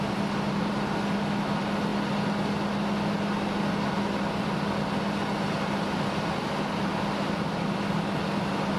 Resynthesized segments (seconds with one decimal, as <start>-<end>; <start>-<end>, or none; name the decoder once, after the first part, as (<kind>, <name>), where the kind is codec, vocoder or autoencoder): none